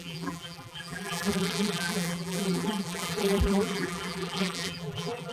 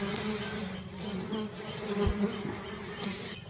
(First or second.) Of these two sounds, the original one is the second